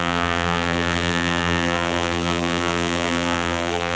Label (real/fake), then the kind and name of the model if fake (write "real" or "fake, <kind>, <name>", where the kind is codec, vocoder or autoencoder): fake, vocoder, BigVGAN v2